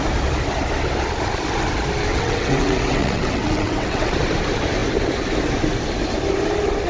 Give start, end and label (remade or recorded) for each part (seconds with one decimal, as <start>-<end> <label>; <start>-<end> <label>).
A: 0.0-2.1 recorded; 2.1-4.1 remade; 4.1-6.9 recorded